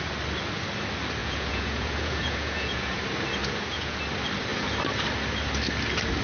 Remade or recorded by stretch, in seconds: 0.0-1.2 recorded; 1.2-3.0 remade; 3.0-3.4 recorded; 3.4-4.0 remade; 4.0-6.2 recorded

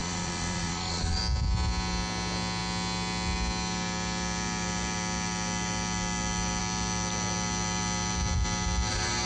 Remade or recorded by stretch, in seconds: 0.0-1.2 remade; 1.2-9.3 recorded

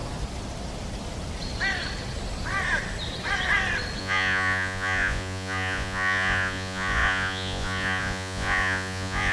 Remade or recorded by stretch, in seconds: 0.0-4.0 recorded; 4.0-9.3 remade

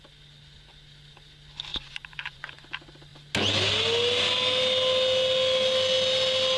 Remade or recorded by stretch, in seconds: 0.0-1.7 recorded; 1.7-2.7 remade; 2.7-6.6 recorded

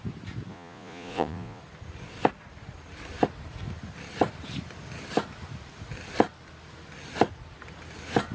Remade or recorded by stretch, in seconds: 0.0-0.5 recorded; 0.5-1.6 remade; 1.6-8.3 recorded

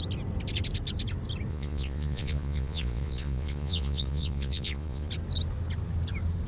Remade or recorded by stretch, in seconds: 0.0-1.5 recorded; 1.5-5.1 remade; 5.1-6.5 recorded